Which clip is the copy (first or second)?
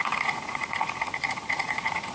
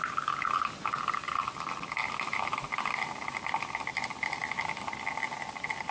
first